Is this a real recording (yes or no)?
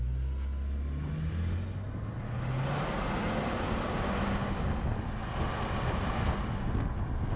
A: yes